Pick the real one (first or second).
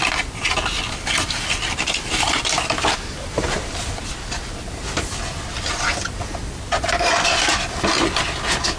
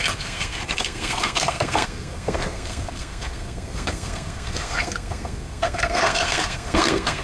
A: first